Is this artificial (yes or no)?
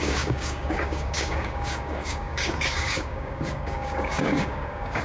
yes